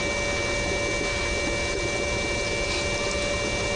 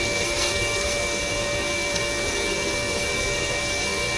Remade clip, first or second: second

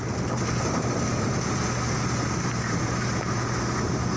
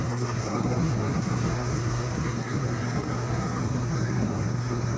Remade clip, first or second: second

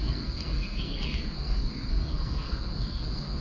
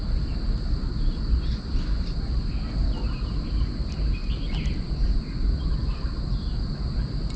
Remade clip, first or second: first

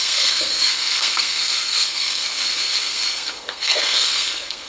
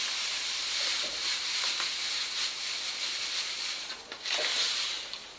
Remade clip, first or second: first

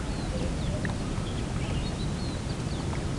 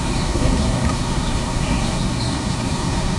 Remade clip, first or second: second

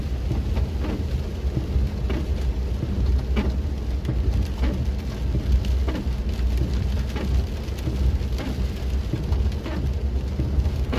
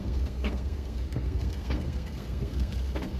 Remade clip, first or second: second